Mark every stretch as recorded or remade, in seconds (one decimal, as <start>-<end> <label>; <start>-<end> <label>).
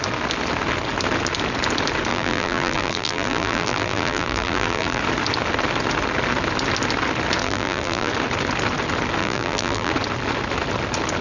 0.0-2.1 recorded; 2.1-5.0 remade; 5.0-7.4 recorded; 7.4-8.1 remade; 8.1-9.2 recorded; 9.2-9.9 remade; 9.9-11.2 recorded